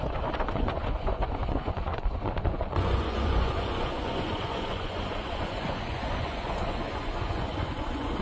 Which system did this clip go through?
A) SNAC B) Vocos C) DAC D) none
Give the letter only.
B